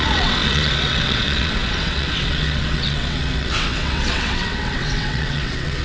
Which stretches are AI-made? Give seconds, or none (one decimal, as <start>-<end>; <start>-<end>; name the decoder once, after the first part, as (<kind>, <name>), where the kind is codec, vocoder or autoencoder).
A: 0.0-5.8 (vocoder, WaveNeXt)